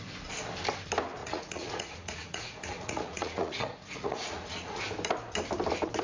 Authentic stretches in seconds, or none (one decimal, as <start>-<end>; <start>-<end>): 0.0-1.2; 4.8-6.0